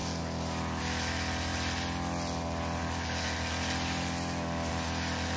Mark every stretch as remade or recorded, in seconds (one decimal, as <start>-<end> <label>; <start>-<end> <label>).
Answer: 0.0-5.4 recorded